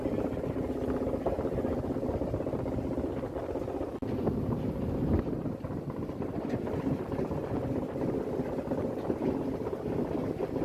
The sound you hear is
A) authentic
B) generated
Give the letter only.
A